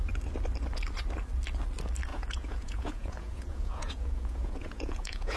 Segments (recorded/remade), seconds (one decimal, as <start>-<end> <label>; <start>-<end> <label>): 0.0-2.1 recorded; 2.1-5.4 remade